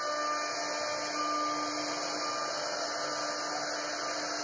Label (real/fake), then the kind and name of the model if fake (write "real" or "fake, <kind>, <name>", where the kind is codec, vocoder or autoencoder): real